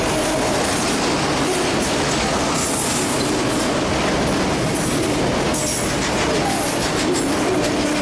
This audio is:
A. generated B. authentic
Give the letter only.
B